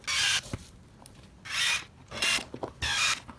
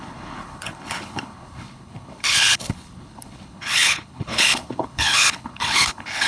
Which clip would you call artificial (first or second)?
second